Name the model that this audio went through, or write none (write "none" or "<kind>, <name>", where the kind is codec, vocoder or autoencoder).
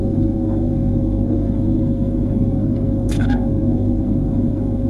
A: codec, SNAC